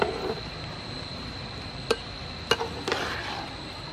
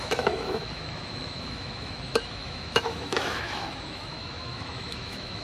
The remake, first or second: second